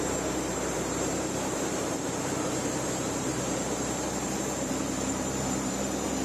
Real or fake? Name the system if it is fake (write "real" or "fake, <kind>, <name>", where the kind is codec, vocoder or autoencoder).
fake, vocoder, BigVGAN v2